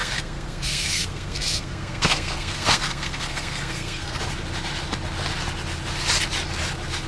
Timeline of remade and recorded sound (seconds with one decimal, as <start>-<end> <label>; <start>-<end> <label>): 0.0-4.2 remade; 4.2-7.1 recorded